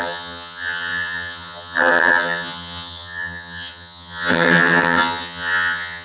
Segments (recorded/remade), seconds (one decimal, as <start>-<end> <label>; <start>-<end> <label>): 0.0-6.0 remade